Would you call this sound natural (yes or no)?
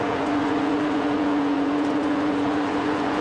no